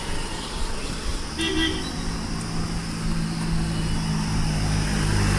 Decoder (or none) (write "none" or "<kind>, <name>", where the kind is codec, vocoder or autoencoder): none